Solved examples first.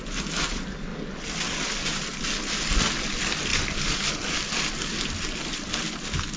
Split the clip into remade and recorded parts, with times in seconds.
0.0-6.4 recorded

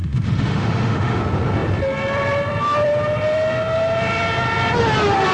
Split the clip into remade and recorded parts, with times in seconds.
0.0-1.2 remade; 1.2-5.3 recorded

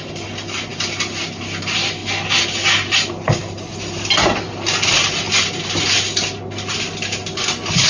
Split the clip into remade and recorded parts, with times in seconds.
0.0-7.9 recorded